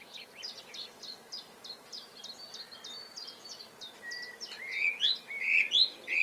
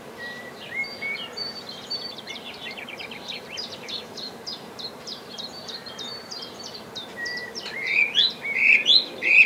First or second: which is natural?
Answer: first